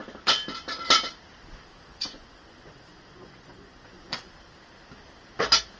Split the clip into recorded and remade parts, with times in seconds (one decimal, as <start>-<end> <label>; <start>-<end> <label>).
0.0-1.7 recorded; 1.7-4.3 remade; 4.3-5.8 recorded